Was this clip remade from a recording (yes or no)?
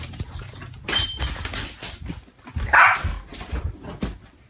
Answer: no